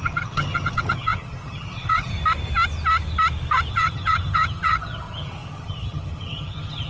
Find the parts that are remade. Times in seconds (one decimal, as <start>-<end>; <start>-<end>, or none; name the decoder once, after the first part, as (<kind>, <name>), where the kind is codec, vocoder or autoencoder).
0.0-2.1 (vocoder, HiFi-GAN); 3.7-6.9